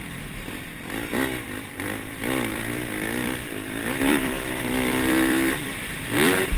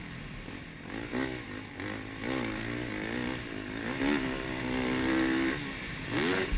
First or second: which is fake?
first